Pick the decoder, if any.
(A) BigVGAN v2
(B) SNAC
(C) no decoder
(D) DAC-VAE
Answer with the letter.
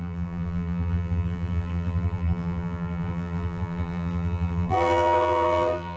A